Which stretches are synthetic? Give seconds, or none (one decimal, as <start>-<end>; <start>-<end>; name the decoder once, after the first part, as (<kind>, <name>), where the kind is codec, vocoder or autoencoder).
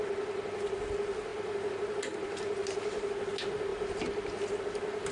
none